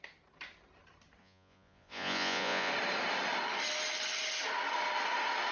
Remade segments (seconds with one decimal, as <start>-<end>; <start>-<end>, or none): 1.2-2.7